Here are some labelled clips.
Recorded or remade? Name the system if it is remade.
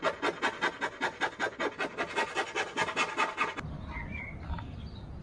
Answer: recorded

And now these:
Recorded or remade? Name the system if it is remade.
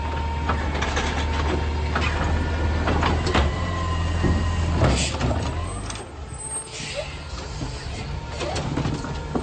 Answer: recorded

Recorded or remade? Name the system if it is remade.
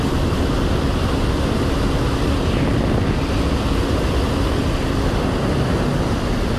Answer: recorded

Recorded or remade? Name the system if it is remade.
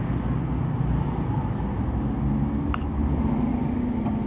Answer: recorded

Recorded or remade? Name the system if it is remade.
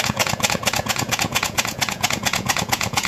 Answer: remade, vocoder, Vocos